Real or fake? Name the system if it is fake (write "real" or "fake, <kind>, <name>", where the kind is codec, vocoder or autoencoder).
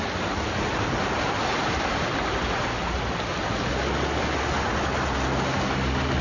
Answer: real